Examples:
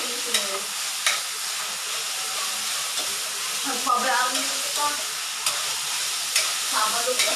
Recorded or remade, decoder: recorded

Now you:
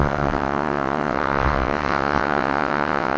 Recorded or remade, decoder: remade, vocoder, WaveNeXt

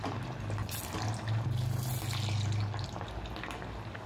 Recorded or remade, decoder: recorded